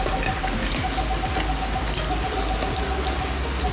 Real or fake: real